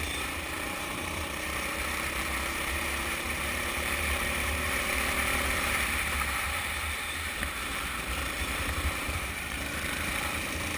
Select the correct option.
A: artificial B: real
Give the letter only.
A